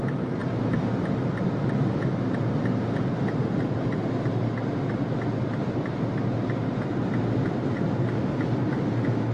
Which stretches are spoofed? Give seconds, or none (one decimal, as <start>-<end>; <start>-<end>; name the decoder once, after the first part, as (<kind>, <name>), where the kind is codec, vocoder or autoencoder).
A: none